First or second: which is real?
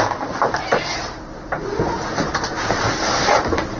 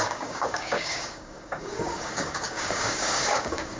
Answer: first